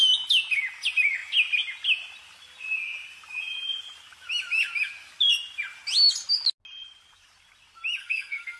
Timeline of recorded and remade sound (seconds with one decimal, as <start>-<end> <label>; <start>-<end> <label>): 0.0-8.0 recorded; 8.0-8.6 remade